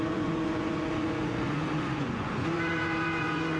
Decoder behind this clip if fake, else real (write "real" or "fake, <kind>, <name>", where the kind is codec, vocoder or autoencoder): fake, vocoder, Vocos